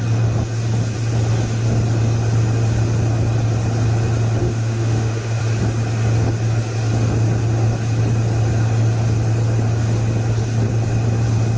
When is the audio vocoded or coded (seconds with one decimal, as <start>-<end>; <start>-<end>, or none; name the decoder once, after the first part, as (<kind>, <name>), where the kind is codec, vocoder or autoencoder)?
4.4-5.4 (autoencoder, DAC-VAE)